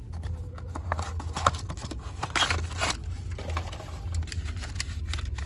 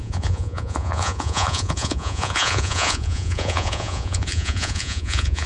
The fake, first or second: second